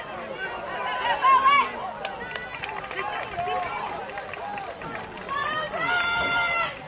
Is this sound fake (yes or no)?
no